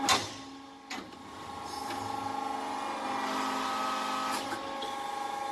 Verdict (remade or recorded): recorded